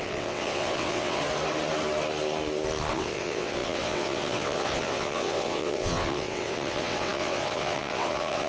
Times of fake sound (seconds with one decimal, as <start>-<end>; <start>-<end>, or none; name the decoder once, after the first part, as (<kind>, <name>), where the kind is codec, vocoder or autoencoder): 0.0-1.2 (vocoder, WaveNeXt); 2.9-8.5

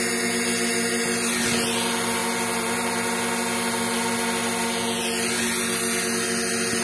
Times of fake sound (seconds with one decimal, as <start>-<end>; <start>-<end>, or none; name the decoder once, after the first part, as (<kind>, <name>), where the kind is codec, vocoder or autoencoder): none

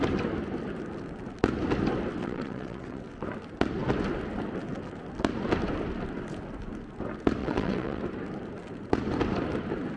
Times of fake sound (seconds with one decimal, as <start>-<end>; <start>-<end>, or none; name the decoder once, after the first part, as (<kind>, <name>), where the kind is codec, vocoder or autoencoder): 2.2-3.0 (vocoder, WaveNeXt); 7.4-8.0

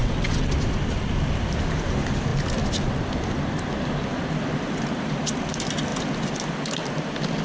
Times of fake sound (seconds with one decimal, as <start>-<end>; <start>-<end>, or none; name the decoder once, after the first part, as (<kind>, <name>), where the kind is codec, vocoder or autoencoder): 0.0-0.5 (vocoder, WaveNeXt)

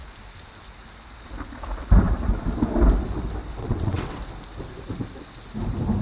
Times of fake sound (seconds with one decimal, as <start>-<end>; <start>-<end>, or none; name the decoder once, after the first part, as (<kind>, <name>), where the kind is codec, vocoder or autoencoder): 3.6-4.2 (vocoder, WaveNeXt)

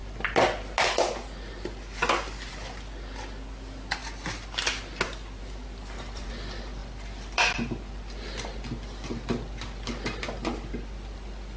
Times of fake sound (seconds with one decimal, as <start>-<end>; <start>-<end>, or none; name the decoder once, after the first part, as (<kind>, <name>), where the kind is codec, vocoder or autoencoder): none